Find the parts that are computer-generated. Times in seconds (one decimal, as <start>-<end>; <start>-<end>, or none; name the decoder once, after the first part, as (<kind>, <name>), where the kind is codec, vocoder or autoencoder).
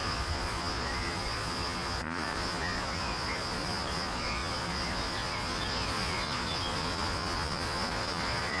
0.0-8.6 (vocoder, Vocos)